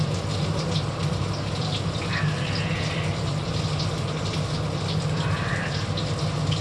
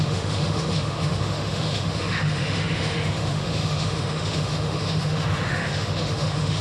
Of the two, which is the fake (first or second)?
second